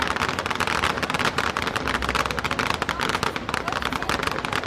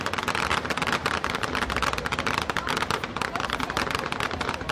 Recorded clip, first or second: first